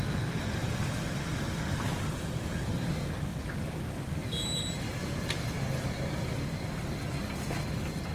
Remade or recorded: recorded